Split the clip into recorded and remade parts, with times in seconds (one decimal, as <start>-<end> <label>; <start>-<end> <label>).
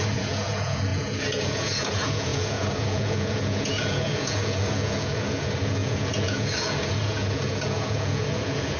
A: 0.0-8.8 remade